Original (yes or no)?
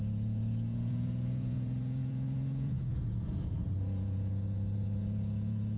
no